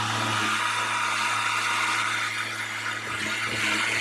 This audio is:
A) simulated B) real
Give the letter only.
B